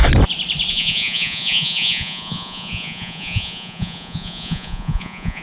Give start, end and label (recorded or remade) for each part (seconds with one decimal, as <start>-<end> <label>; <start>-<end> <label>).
0.0-0.7 recorded; 0.7-5.4 remade